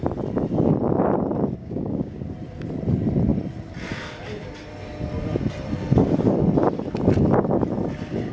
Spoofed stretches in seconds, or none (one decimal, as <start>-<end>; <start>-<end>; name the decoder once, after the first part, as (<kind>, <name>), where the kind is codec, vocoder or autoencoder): 1.6-2.2 (codec, DAC)